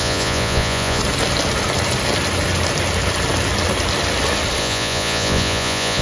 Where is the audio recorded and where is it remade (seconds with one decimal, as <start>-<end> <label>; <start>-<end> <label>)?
0.0-1.0 remade; 1.0-4.6 recorded; 4.6-6.0 remade